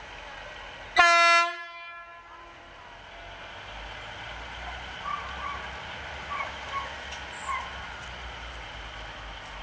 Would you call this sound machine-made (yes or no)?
no